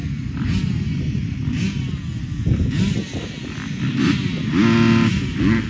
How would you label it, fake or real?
real